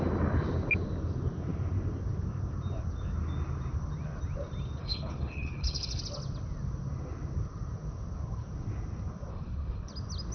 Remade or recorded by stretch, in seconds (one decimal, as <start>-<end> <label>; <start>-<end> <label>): 0.0-4.8 recorded; 4.8-6.0 remade; 6.0-9.3 recorded; 9.3-9.9 remade; 9.9-10.3 recorded

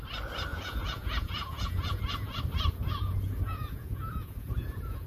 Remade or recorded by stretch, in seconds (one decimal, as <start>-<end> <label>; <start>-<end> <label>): 0.0-0.5 recorded; 0.5-2.4 remade; 2.4-2.8 recorded; 2.8-5.1 remade

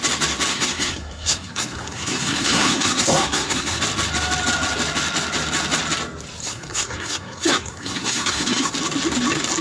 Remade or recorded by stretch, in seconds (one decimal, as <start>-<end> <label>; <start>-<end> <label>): 0.0-0.5 recorded; 0.5-3.8 remade; 3.8-6.4 recorded; 6.4-8.7 remade; 8.7-9.6 recorded

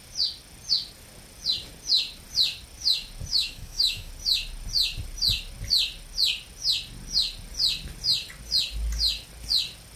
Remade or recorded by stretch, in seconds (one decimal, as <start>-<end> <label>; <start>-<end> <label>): 0.0-3.3 recorded; 3.3-4.1 remade; 4.1-10.0 recorded